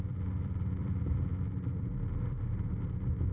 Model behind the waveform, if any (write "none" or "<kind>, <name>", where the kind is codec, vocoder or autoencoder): vocoder, BigVGAN v2